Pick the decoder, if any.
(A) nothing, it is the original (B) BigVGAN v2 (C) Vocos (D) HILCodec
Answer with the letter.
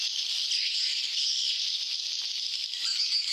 A